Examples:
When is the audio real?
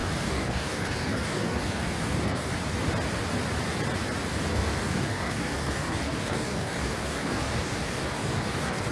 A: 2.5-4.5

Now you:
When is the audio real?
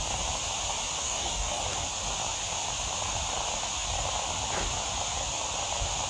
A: 0.0-1.0; 1.6-6.1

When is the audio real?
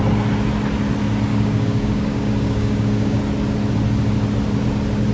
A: 0.0-1.3; 3.2-5.1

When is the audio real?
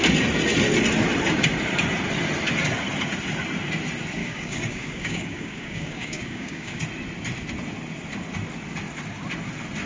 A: 0.0-4.2; 6.8-9.9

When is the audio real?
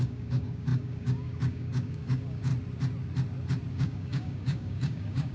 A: 2.5-3.7